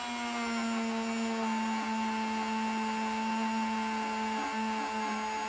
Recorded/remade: recorded